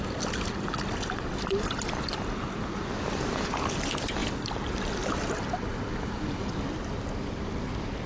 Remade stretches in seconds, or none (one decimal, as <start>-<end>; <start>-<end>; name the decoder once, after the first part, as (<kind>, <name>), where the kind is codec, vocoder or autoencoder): none